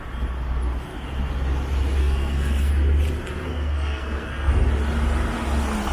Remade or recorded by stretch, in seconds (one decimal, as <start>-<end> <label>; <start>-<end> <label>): 0.0-2.0 recorded; 2.0-2.7 remade; 2.7-3.5 recorded; 3.5-4.5 remade; 4.5-5.9 recorded